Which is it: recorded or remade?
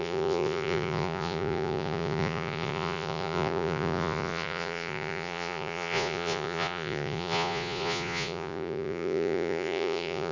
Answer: remade